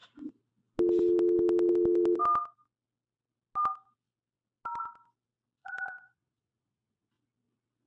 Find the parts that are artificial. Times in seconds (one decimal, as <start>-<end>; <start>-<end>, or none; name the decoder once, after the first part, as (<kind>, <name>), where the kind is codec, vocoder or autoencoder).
5.6-7.1 (vocoder, Vocos)

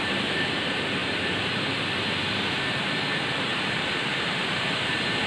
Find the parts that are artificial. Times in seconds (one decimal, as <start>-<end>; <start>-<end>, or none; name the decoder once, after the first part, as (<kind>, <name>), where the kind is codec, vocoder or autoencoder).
0.0-5.3 (vocoder, BigVGAN v2)